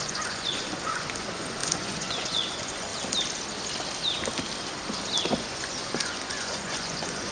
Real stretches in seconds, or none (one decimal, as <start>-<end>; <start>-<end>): 2.9-5.4